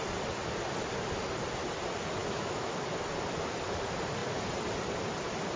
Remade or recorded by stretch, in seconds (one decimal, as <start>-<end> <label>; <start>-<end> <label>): 0.0-2.2 recorded; 2.2-2.7 remade; 2.7-5.6 recorded